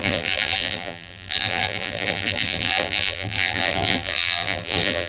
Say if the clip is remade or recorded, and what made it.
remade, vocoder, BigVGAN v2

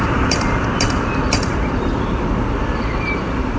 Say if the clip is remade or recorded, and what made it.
remade, vocoder, BigVGAN v2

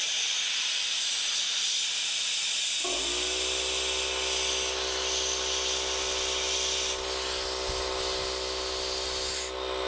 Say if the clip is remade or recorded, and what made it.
recorded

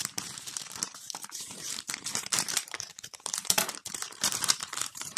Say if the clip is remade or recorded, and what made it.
remade, vocoder, BigVGAN v2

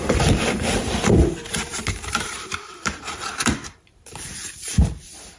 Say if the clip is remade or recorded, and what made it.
remade, vocoder, BigVGAN v2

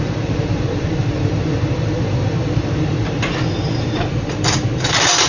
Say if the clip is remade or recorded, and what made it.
remade, vocoder, BigVGAN v2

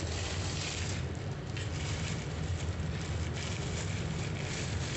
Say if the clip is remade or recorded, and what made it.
recorded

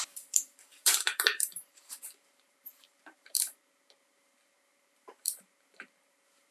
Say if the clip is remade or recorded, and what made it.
remade, vocoder, BigVGAN v2